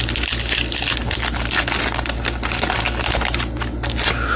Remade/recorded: recorded